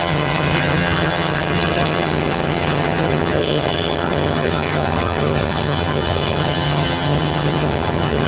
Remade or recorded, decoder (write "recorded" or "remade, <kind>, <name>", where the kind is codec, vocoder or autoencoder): remade, vocoder, HiFi-GAN